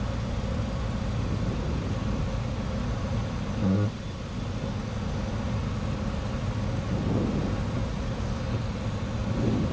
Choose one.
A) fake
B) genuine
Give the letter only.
B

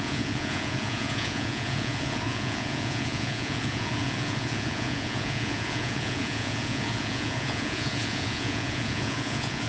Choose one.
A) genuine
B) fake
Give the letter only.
B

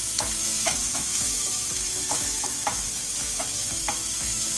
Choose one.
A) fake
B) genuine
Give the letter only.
A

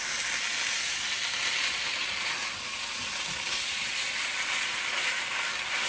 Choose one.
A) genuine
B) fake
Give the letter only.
A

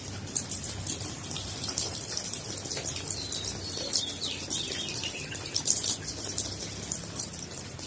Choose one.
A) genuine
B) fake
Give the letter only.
A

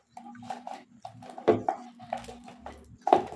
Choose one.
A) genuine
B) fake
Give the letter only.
A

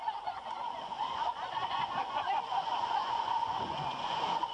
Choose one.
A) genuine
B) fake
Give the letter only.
B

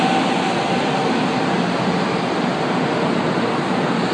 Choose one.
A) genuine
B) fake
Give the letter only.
A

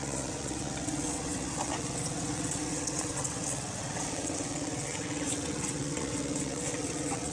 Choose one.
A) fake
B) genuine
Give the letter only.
A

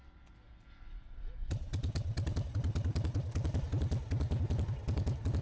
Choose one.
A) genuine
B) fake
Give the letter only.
A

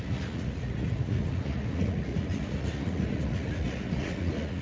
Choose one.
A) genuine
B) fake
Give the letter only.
B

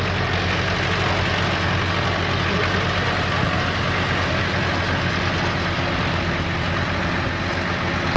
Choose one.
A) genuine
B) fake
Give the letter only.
A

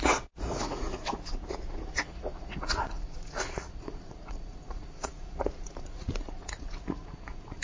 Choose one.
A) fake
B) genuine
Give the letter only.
A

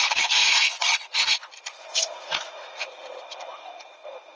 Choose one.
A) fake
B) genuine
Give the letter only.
A